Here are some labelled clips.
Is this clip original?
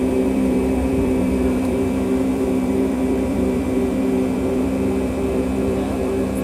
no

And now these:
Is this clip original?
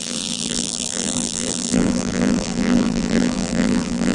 no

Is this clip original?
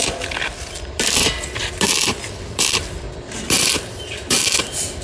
no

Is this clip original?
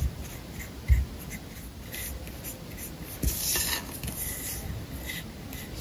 yes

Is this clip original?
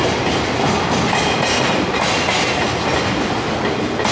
yes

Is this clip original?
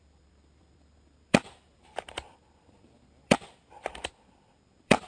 no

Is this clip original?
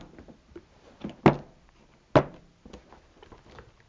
yes